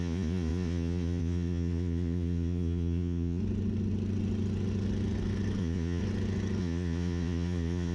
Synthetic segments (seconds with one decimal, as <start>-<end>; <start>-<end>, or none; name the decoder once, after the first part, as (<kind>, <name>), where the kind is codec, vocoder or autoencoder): 0.0-3.4 (vocoder, Vocos); 5.6-6.0; 6.6-7.9